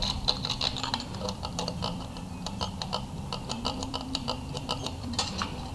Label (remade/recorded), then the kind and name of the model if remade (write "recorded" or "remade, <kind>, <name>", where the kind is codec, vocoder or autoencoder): remade, vocoder, BigVGAN v2